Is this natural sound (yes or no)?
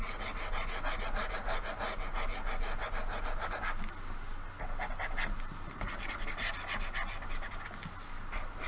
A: yes